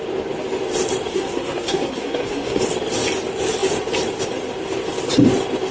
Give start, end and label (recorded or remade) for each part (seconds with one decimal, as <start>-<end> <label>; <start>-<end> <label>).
0.0-1.1 recorded; 1.1-2.6 remade; 2.6-5.7 recorded

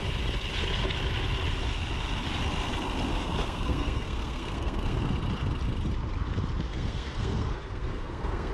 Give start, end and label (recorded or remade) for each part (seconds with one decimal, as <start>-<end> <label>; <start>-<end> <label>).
0.0-3.1 recorded; 3.1-5.0 remade; 5.0-6.7 recorded; 6.7-8.5 remade

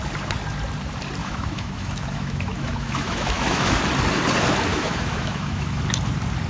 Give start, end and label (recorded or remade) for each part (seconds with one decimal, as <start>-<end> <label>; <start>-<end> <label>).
0.0-1.2 recorded; 1.2-3.8 remade; 3.8-4.7 recorded; 4.7-5.8 remade; 5.8-6.5 recorded

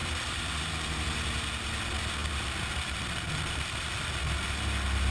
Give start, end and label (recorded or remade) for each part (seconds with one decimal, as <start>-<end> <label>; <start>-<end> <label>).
0.0-0.6 remade; 0.6-2.2 recorded; 2.2-4.1 remade; 4.1-5.1 recorded

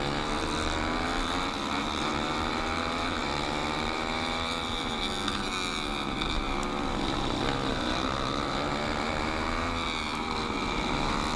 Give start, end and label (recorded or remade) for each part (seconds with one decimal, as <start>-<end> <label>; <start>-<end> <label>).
0.0-11.4 recorded

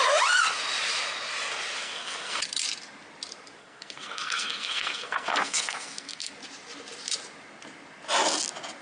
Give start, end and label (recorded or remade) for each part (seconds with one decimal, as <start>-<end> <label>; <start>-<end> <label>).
0.0-1.8 recorded; 1.8-2.4 remade; 2.4-3.6 recorded; 3.6-6.3 remade; 6.3-8.8 recorded

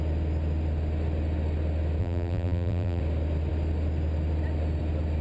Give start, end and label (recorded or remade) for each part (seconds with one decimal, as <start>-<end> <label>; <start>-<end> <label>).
0.0-2.0 recorded; 2.0-3.0 remade; 3.0-5.2 recorded